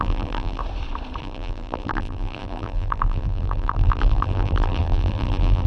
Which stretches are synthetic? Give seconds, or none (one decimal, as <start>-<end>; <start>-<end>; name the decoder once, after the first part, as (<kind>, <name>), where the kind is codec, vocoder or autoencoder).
0.0-0.6 (vocoder, BigVGAN v2); 1.2-5.7